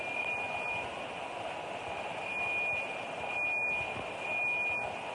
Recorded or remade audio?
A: recorded